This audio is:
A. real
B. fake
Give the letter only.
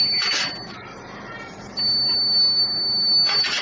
A